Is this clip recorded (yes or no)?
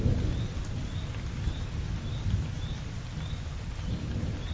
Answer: yes